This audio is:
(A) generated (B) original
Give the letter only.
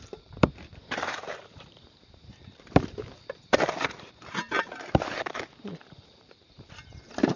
A